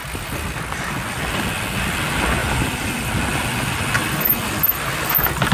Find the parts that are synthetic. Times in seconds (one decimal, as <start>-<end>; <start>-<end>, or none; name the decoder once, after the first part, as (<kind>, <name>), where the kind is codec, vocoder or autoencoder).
2.4-3.1 (vocoder, BigVGAN v2)